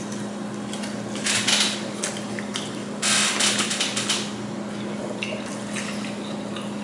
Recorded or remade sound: recorded